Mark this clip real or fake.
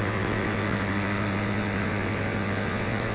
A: fake